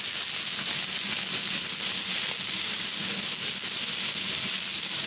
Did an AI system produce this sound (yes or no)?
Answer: no